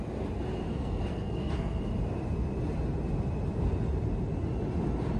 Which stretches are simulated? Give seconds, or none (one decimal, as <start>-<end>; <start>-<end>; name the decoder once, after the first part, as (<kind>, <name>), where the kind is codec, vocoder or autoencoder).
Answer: 0.7-1.8 (codec, SNAC)